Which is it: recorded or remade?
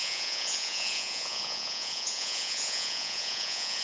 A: remade